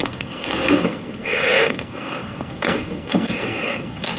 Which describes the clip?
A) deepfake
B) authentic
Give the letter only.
A